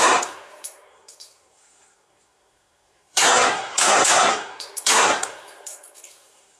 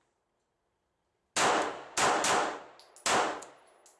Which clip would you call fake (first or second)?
first